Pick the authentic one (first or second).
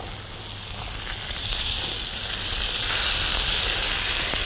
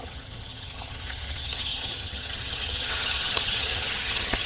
first